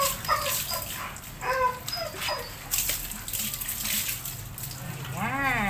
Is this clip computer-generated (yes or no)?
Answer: no